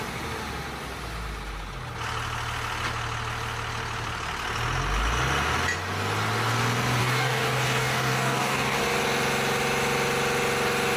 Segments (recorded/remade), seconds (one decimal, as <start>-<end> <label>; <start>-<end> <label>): 0.0-7.0 recorded; 7.0-8.8 remade; 8.8-11.0 recorded